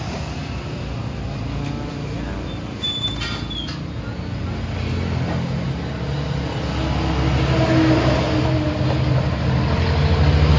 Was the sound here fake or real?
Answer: real